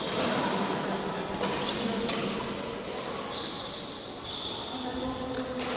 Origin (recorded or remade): recorded